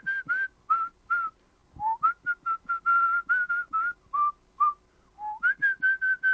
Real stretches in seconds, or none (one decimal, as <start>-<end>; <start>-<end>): 0.0-6.3